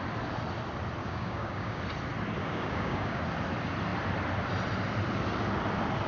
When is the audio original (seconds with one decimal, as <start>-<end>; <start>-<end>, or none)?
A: 0.0-1.0; 1.8-2.4; 3.2-6.1